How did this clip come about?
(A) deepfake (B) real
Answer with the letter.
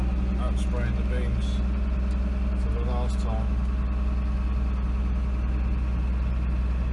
B